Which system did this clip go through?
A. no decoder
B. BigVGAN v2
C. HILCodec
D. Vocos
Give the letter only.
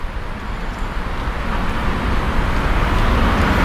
A